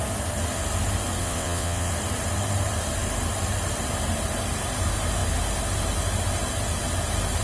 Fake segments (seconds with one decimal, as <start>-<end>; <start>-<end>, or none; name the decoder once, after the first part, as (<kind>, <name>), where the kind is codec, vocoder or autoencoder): 1.2-1.9 (vocoder, WaveNeXt)